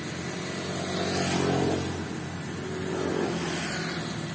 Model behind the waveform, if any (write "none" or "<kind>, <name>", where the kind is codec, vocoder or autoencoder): none